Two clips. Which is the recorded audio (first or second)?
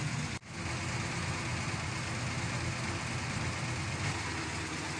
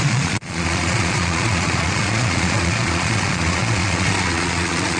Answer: first